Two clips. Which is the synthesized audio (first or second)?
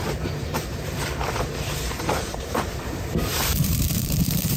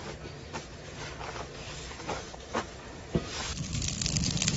first